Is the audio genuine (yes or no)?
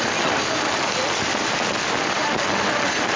yes